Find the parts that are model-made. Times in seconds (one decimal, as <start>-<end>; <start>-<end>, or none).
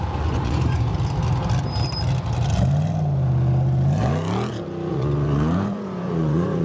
0.0-0.9; 4.9-6.6